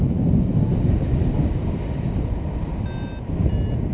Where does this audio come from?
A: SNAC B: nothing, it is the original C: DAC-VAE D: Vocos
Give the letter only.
B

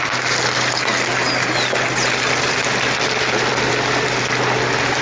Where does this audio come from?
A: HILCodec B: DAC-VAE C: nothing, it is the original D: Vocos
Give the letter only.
C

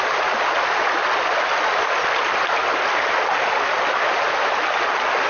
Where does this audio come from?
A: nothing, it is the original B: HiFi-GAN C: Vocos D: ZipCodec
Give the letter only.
A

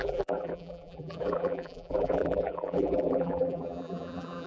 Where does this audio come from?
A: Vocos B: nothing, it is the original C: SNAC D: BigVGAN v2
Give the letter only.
D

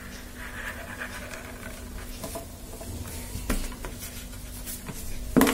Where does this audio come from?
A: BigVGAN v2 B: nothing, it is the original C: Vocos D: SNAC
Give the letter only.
B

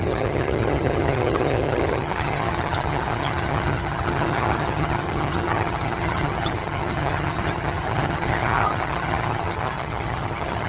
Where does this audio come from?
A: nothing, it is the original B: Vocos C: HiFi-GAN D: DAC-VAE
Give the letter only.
C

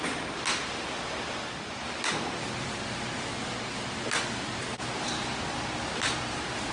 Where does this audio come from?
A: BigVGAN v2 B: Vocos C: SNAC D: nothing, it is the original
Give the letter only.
D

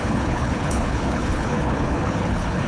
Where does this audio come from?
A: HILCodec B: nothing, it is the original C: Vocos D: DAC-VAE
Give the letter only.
A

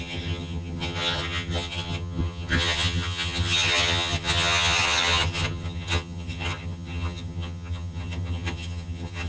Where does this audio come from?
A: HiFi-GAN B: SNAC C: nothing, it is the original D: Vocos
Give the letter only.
A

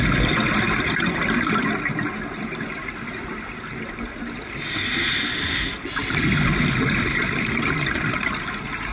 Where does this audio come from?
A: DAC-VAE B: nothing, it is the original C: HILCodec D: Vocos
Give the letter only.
B